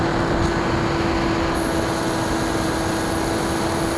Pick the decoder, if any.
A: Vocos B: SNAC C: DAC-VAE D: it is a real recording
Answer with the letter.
D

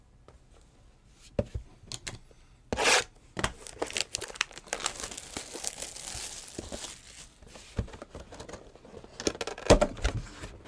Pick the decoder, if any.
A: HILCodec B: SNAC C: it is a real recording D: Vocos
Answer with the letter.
C